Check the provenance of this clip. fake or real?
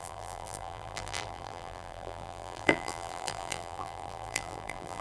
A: fake